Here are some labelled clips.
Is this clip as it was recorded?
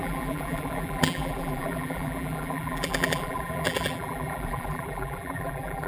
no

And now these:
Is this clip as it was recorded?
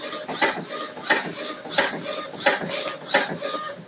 yes